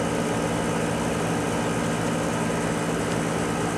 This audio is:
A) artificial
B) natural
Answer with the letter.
B